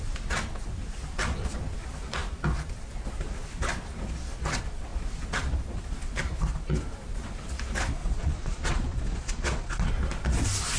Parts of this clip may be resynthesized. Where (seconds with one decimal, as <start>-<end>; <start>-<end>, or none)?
8.0-9.9